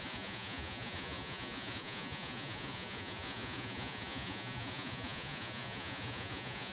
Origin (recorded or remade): remade